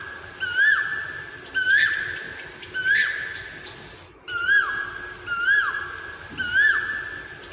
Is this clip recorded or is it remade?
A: recorded